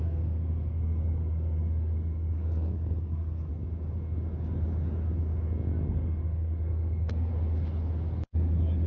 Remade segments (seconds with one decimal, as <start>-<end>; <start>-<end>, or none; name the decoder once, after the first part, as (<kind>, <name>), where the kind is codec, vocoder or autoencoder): 0.0-3.5 (codec, SNAC); 5.9-7.3